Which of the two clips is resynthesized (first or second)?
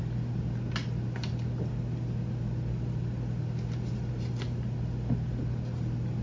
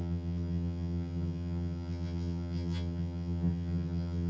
second